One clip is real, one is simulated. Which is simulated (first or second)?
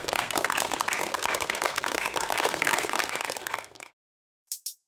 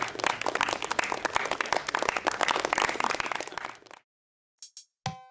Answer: first